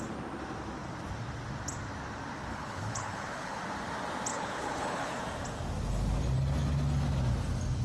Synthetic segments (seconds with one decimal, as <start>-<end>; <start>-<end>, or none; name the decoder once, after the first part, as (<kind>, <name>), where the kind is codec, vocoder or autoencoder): 2.5-3.6 (codec, HILCodec); 4.3-5.2